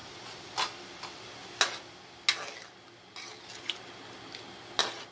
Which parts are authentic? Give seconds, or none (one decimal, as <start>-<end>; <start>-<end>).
0.0-5.1